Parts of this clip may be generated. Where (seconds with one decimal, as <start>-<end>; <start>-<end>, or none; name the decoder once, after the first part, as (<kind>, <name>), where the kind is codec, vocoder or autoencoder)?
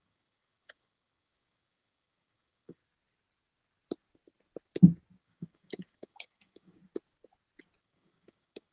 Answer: 0.0-2.8 (codec, DAC); 5.2-6.8; 7.8-8.7